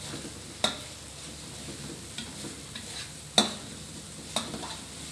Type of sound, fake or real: real